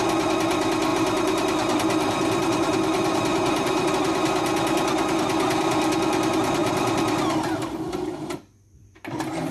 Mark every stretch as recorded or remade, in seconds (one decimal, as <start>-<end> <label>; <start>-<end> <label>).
0.0-0.9 recorded; 0.9-3.9 remade; 3.9-6.6 recorded; 6.6-7.9 remade; 7.9-9.5 recorded